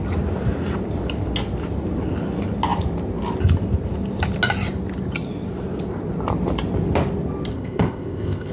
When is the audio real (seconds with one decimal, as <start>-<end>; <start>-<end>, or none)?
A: 0.0-7.5